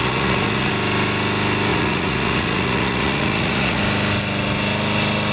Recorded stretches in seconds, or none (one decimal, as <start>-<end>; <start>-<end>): 0.7-1.7; 3.8-5.3